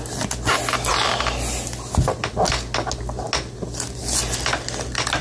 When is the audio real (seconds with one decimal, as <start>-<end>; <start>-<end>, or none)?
0.0-5.2